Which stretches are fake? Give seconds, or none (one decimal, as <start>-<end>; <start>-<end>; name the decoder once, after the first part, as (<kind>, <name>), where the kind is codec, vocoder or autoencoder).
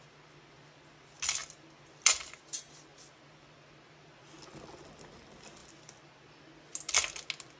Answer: none